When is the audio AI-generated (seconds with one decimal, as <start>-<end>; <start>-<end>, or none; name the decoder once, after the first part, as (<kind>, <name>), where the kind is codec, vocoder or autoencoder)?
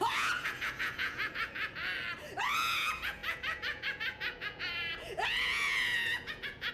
0.0-1.8 (vocoder, Vocos); 2.4-6.7